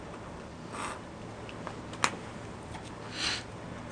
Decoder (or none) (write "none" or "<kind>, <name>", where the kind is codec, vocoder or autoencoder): none